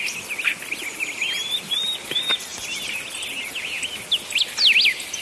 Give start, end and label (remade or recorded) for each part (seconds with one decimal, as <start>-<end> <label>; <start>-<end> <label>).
0.0-5.2 recorded